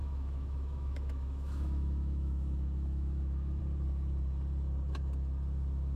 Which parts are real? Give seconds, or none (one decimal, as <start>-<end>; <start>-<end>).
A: 3.6-6.0